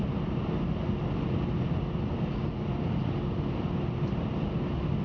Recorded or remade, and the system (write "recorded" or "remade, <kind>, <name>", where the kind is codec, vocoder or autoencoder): recorded